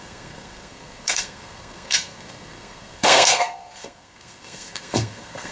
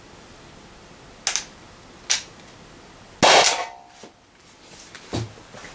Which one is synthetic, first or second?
first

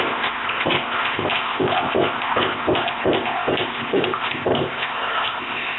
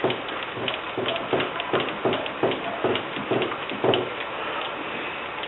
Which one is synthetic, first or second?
first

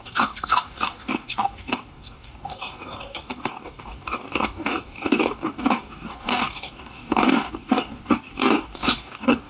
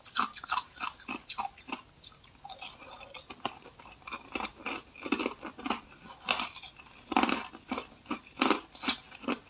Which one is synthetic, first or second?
first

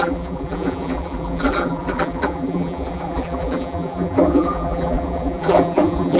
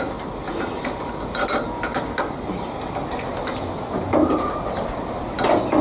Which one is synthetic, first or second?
first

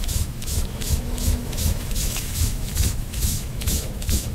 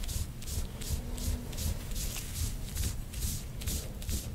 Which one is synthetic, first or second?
first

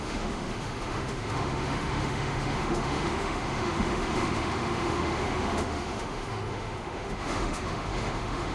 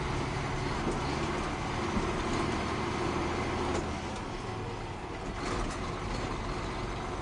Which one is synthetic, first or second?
first